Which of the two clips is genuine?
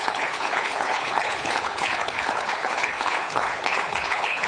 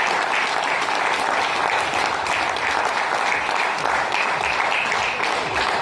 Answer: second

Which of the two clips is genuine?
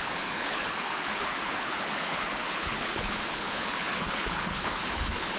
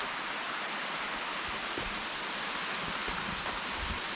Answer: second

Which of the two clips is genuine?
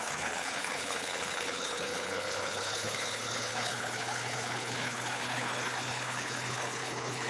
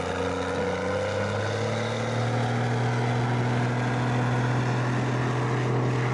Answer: second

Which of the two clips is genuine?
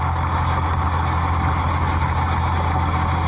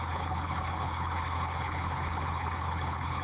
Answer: first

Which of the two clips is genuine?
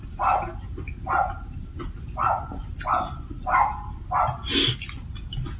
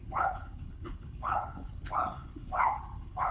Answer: first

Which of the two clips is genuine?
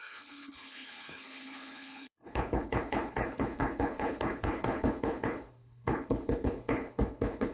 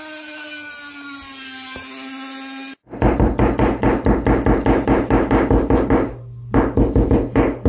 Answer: second